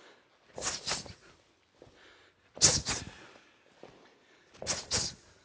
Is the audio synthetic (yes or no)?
no